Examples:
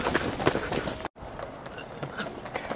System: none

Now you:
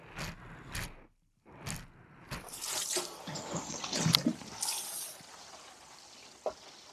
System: none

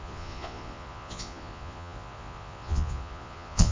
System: vocoder, Vocos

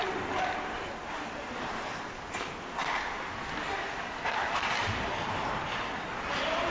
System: none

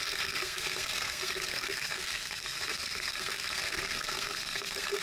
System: codec, SNAC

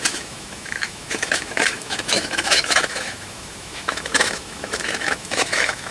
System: autoencoder, DAC-VAE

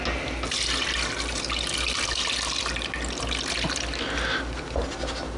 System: none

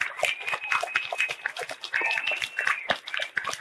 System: none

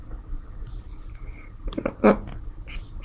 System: none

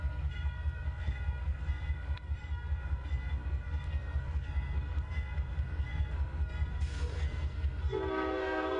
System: codec, SNAC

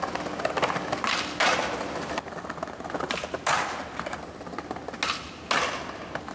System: none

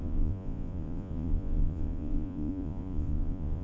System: vocoder, Vocos